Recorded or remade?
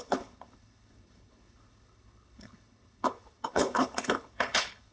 remade